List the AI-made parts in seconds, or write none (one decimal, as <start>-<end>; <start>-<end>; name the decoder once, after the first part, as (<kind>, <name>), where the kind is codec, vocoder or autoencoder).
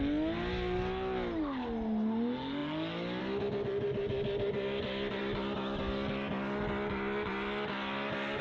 none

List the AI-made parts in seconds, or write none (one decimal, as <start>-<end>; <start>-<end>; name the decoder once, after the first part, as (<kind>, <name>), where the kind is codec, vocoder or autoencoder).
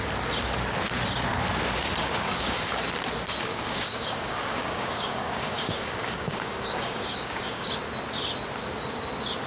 2.0-2.8 (codec, DAC); 3.5-7.7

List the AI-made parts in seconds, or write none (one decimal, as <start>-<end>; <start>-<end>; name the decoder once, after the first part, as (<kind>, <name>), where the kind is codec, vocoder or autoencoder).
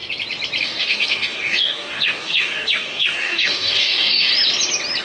0.6-4.3 (codec, DAC)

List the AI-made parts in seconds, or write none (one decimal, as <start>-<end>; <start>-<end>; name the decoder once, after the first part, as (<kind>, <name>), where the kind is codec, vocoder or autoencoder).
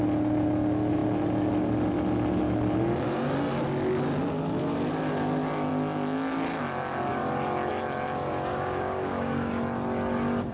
8.5-9.6 (codec, DAC)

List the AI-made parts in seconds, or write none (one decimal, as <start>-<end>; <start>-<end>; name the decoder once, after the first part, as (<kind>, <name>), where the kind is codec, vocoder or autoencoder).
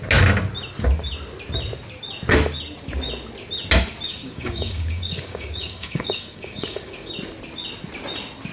4.1-7.1 (codec, DAC)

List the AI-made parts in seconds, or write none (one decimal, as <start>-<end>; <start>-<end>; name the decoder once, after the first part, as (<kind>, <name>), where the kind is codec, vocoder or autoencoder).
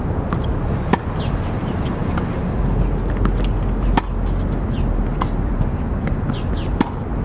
none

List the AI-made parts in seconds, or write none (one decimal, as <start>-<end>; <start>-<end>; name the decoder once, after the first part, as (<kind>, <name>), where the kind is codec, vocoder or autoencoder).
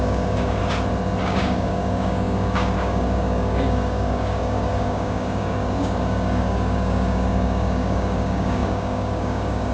0.0-0.6 (codec, DAC); 1.2-9.7